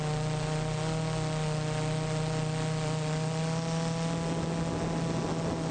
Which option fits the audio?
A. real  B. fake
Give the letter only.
A